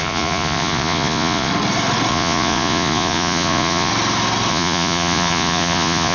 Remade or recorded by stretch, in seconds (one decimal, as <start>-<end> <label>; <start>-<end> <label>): 0.0-1.5 remade; 1.5-2.1 recorded; 2.1-3.9 remade; 3.9-4.5 recorded; 4.5-6.1 remade

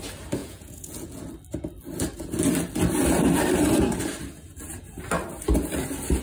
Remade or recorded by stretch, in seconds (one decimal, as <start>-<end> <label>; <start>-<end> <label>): 0.0-0.4 recorded; 0.4-1.2 remade; 1.2-6.2 recorded

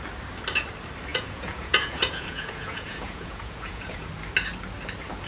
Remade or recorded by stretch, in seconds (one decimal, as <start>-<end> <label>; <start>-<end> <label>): 0.0-1.1 recorded; 1.1-4.1 remade; 4.1-5.3 recorded

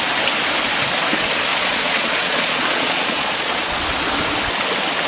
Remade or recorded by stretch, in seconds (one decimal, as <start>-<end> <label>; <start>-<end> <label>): 0.0-1.5 recorded; 1.5-3.8 remade; 3.8-5.1 recorded

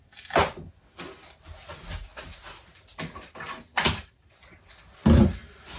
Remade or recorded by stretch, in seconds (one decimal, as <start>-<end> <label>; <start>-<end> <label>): 0.0-5.8 recorded

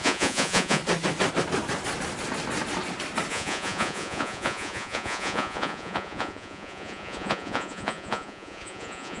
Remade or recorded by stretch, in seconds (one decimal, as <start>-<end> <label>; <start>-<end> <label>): 0.0-0.8 remade; 0.8-3.3 recorded; 3.3-9.2 remade

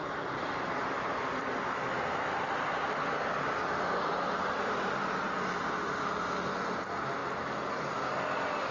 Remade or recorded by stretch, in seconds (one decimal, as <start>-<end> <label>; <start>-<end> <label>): 0.0-8.7 recorded

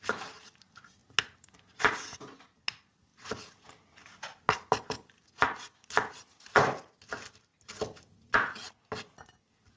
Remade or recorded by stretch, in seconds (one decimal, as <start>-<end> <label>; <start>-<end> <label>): 0.0-9.8 recorded